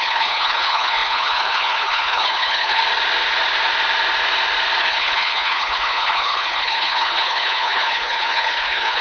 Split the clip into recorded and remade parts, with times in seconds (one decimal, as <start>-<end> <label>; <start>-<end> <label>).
0.0-2.8 remade; 2.8-4.8 recorded; 4.8-9.0 remade